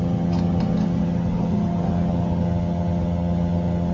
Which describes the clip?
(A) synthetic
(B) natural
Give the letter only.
A